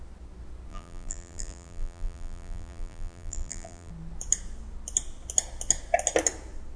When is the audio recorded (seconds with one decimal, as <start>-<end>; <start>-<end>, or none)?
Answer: 0.0-0.7; 3.9-6.8